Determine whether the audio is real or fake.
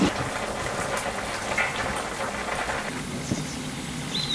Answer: real